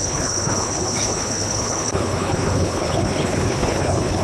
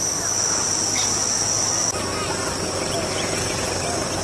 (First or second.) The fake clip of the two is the first